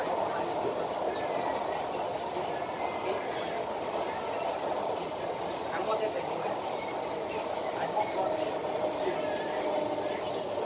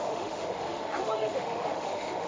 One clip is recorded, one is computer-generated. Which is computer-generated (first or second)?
second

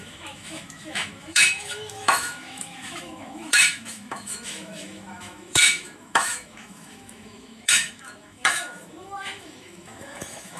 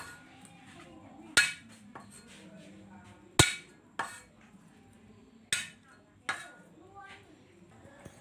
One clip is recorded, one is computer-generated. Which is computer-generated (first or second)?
first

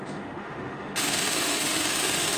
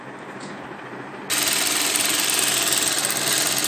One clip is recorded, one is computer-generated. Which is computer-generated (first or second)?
first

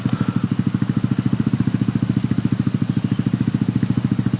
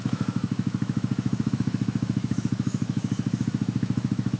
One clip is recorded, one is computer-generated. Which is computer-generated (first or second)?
second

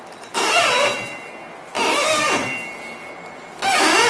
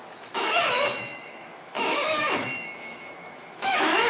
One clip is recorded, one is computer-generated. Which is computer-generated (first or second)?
second